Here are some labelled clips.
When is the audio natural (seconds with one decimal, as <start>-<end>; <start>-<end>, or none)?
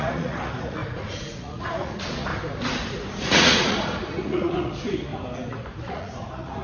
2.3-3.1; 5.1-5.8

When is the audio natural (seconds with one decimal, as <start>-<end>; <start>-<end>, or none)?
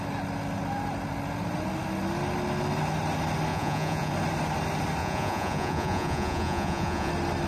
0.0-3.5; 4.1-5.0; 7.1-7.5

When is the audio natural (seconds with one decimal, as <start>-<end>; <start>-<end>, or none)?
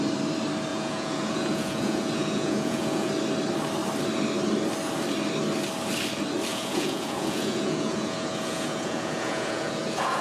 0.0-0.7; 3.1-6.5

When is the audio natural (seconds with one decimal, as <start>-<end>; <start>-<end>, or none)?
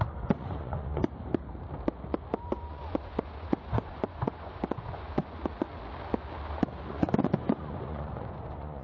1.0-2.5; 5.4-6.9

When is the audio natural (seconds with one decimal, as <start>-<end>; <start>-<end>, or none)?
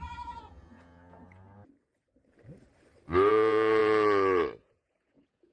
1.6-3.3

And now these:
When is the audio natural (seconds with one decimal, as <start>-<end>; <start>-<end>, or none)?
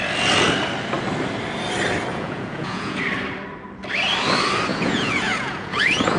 0.0-2.1; 3.0-4.7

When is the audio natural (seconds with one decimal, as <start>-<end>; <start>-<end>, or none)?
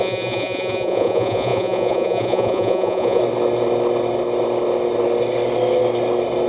3.2-6.5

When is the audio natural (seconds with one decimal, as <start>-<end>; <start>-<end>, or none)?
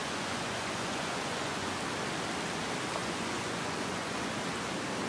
1.7-3.0; 4.3-5.1